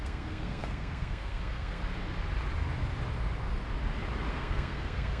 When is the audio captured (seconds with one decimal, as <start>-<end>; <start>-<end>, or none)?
1.8-4.3